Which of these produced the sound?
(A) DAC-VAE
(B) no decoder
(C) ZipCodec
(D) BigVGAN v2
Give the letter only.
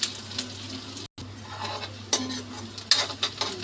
B